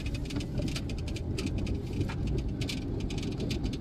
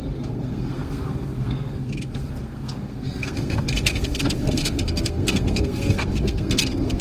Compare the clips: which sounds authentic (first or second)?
first